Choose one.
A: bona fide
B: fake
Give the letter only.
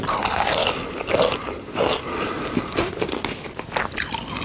B